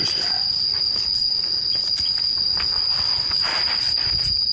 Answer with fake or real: real